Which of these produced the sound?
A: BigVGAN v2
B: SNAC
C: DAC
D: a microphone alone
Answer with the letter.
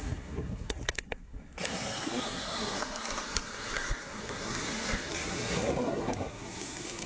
B